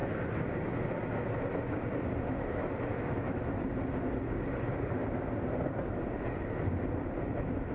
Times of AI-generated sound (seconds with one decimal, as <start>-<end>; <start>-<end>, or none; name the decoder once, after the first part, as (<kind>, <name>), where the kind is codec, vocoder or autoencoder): 2.9-3.4 (autoencoder, DAC-VAE)